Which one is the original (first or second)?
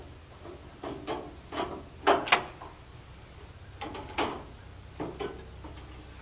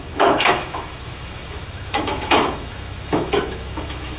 first